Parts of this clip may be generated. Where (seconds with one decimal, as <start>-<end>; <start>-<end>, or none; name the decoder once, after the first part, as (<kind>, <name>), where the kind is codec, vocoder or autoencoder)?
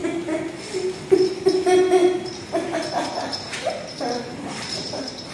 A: 2.0-5.3 (vocoder, BigVGAN v2)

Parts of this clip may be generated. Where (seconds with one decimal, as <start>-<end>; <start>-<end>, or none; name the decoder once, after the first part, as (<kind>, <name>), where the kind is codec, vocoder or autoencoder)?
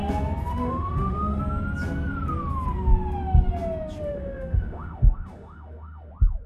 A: 0.5-1.4 (autoencoder, DAC-VAE); 4.0-6.1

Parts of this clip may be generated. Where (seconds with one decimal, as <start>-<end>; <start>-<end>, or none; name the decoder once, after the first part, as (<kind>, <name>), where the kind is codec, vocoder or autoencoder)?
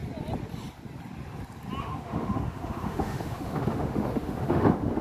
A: 1.8-5.0 (autoencoder, DAC-VAE)